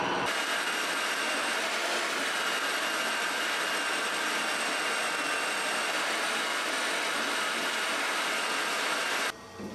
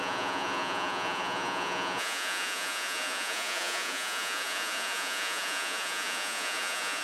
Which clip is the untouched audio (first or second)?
first